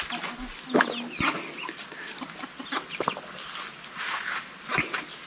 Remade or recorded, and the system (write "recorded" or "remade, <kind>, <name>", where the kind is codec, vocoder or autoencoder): recorded